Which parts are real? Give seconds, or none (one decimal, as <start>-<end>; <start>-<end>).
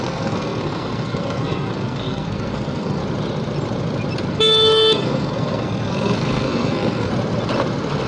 3.0-4.3; 7.1-8.1